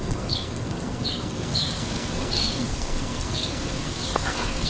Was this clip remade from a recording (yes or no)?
yes